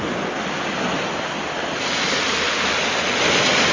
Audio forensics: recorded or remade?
recorded